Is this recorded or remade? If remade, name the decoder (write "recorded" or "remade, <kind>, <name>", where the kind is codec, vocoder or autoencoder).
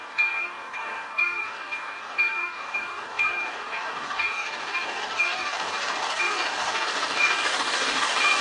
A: remade, codec, DAC